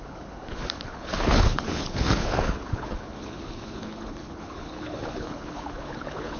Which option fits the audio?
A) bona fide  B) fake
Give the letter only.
B